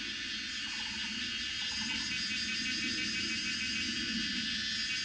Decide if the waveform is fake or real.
real